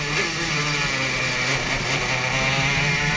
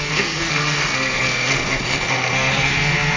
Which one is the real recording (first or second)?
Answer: first